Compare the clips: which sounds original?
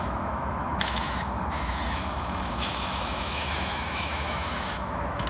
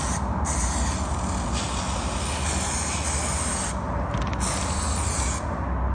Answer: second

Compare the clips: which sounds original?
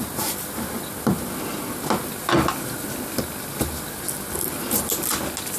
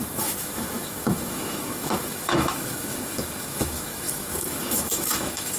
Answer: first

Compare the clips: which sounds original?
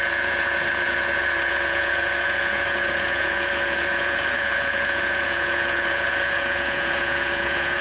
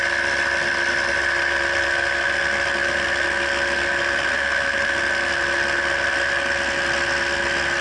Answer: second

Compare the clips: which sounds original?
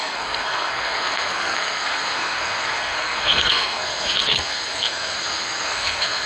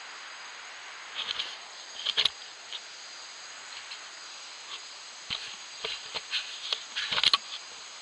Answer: second